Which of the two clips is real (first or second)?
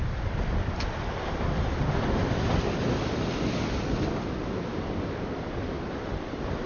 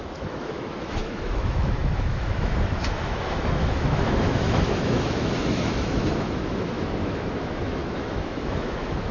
first